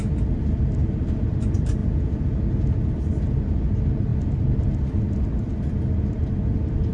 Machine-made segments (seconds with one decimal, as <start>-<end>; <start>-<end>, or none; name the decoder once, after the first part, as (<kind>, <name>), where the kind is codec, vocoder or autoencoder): 1.8-2.4 (vocoder, Vocos)